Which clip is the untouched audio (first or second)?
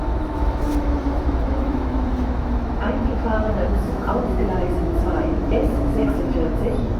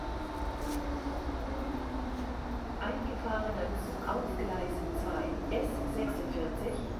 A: second